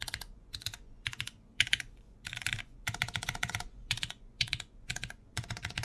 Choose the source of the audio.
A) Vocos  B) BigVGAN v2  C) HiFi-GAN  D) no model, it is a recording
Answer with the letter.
A